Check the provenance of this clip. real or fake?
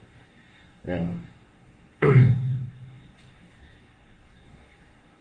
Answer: fake